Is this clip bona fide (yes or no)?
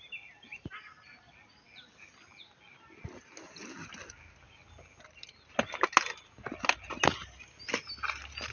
yes